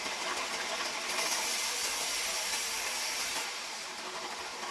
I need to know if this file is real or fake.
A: real